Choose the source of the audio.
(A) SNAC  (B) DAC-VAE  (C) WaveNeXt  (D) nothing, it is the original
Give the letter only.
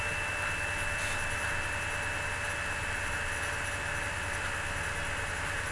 D